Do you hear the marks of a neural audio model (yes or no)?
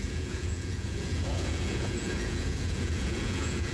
yes